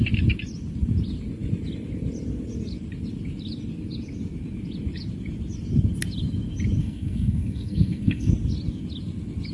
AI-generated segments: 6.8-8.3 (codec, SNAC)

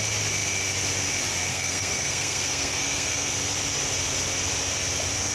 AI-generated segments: 1.5-3.3 (codec, SNAC)

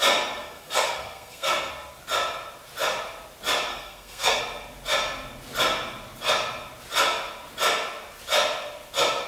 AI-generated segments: 0.4-1.7 (codec, SNAC); 3.7-4.4

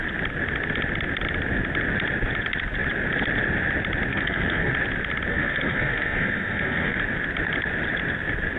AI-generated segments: 4.1-4.7 (codec, SNAC); 5.3-7.0

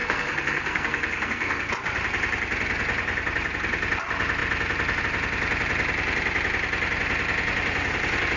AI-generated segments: 0.0-1.7 (codec, SNAC)

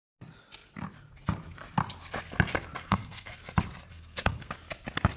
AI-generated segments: 2.8-3.4 (codec, SNAC); 3.9-4.5

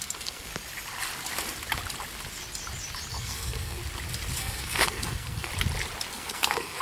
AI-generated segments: 0.0-0.5 (codec, SNAC); 3.1-3.8; 4.4-5.5; 6.1-6.8